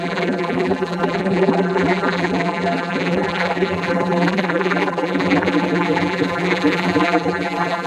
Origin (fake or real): fake